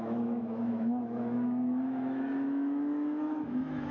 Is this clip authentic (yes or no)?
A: no